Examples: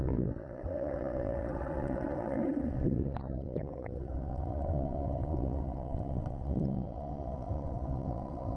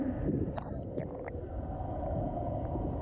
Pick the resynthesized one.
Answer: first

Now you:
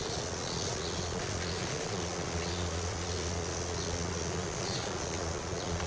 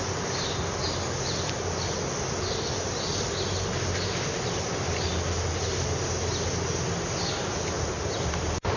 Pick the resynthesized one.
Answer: first